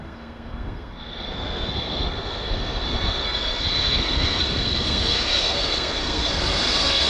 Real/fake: fake